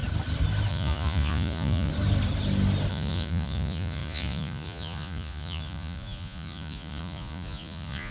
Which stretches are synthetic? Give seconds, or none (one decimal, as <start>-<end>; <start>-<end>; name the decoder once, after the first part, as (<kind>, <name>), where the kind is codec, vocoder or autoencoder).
0.7-1.9 (vocoder, Vocos); 2.9-8.1